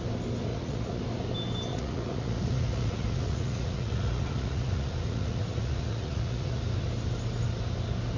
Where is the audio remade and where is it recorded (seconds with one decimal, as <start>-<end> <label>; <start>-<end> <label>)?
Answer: 0.0-0.5 recorded; 0.5-1.0 remade; 1.0-1.7 recorded; 1.7-6.6 remade; 6.6-8.2 recorded